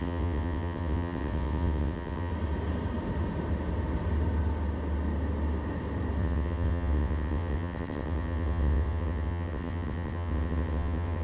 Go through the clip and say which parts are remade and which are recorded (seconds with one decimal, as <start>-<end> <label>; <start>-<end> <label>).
0.0-2.3 remade; 2.3-6.2 recorded; 6.2-11.2 remade